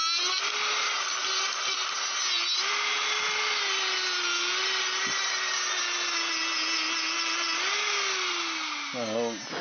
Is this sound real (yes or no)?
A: yes